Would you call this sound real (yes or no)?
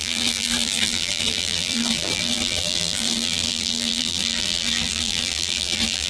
no